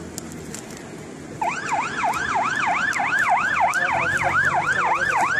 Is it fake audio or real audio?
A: real